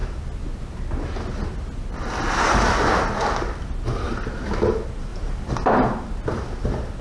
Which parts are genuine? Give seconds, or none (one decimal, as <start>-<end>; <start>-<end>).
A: 0.0-7.0